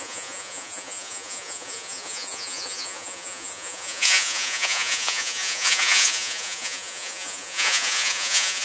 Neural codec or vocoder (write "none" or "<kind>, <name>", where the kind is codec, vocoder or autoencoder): vocoder, Vocos